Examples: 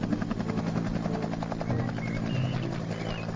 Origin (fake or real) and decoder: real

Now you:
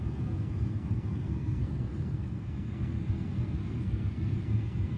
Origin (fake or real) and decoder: fake, codec, SNAC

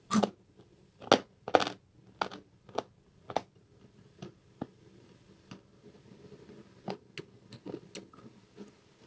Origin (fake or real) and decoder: real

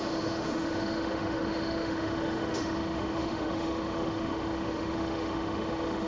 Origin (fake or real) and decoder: fake, autoencoder, DAC-VAE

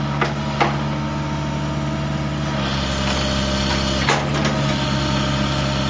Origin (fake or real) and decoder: real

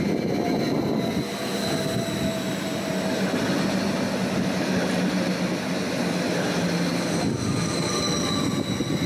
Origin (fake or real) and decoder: real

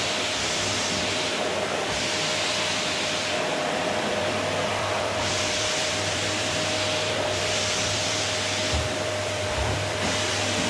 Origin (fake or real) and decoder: fake, vocoder, BigVGAN v2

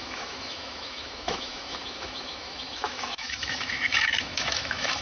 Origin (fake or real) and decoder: fake, autoencoder, DAC-VAE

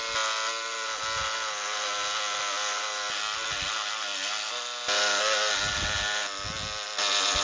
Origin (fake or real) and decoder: real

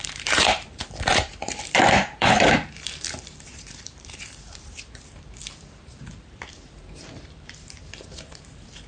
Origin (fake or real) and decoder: fake, vocoder, BigVGAN v2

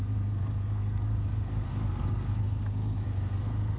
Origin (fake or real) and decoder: fake, codec, SNAC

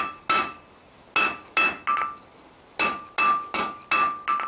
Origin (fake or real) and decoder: real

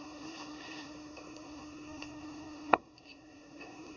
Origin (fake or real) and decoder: fake, codec, SNAC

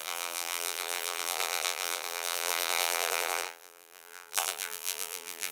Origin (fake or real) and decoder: fake, vocoder, BigVGAN v2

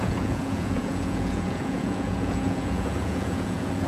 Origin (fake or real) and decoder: fake, vocoder, Vocos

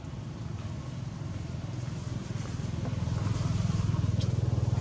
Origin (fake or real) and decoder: real